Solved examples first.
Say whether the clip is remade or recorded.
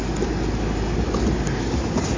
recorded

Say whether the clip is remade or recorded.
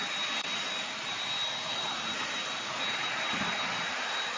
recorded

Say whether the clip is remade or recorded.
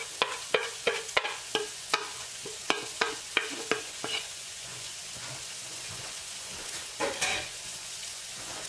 remade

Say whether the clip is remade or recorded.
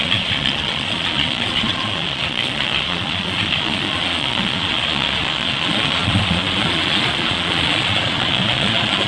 remade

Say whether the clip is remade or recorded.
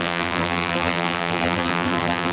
remade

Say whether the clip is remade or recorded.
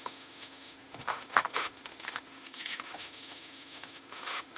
remade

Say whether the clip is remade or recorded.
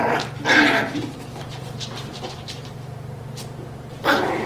remade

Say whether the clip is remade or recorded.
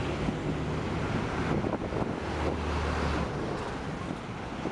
recorded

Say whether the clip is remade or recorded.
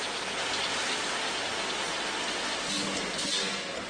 recorded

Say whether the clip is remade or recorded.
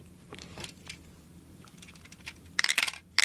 remade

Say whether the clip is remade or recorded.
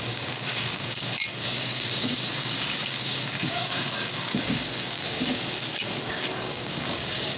remade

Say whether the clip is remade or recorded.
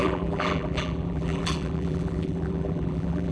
remade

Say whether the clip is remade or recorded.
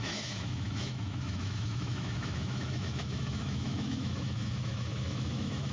remade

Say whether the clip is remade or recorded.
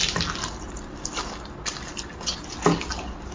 recorded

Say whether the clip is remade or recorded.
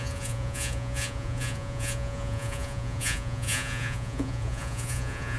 remade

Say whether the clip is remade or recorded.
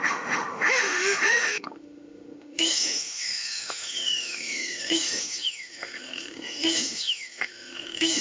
remade